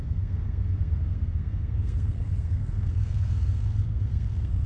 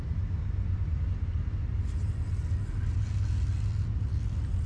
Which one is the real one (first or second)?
second